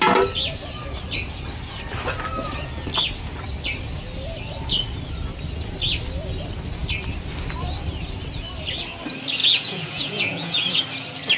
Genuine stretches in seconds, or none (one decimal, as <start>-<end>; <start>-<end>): 0.0-9.4; 10.8-11.4